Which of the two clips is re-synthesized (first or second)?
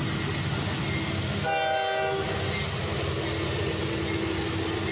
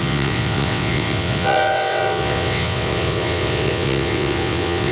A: second